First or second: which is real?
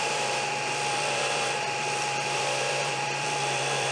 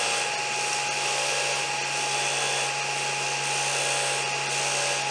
second